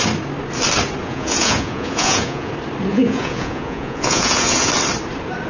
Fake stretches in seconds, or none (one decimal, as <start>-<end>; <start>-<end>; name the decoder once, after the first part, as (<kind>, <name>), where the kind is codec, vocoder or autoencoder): 1.0-2.5 (vocoder, Vocos); 2.9-4.7